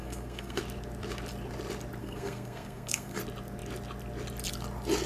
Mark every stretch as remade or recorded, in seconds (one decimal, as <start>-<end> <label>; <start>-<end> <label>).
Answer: 0.0-0.6 remade; 0.6-2.0 recorded; 2.0-3.2 remade; 3.2-5.1 recorded